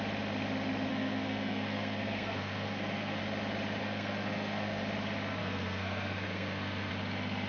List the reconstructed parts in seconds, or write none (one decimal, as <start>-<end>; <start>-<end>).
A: 0.9-3.2; 3.8-4.8; 5.4-6.9